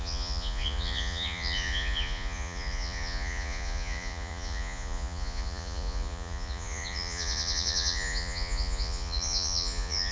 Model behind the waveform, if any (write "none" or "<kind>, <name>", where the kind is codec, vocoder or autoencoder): vocoder, Vocos